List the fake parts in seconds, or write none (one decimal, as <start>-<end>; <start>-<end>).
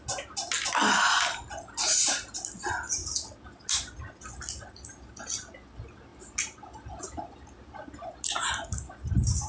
none